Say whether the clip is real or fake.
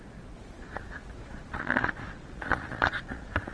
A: fake